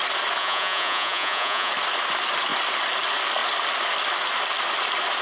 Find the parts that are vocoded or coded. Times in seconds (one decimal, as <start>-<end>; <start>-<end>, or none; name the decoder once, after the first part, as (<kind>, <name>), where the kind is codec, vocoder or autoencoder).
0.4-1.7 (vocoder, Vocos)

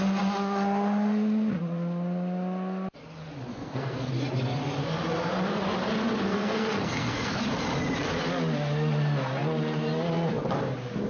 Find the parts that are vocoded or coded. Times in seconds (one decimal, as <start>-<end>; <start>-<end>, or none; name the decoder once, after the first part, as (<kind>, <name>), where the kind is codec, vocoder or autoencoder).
3.5-4.1 (codec, SNAC); 6.3-7.4

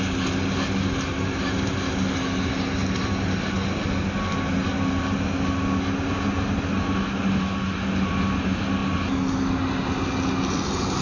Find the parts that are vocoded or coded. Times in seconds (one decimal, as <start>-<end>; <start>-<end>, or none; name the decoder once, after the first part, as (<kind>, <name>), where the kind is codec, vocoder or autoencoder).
none